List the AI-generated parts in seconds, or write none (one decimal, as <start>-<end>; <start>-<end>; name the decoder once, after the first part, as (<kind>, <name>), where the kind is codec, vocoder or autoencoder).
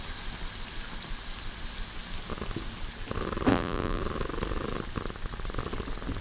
3.5-4.0 (vocoder, BigVGAN v2)